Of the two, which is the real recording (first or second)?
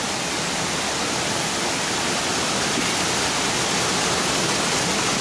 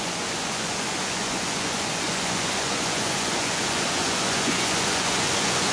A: first